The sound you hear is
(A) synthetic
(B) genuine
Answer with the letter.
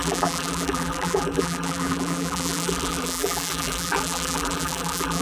A